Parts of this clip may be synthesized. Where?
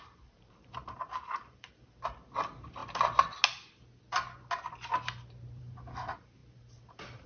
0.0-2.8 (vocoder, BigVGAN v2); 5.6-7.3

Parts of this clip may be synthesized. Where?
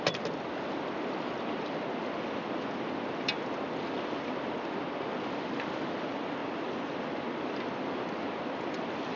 none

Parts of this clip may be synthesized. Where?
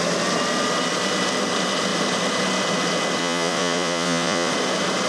3.2-4.5 (vocoder, Vocos)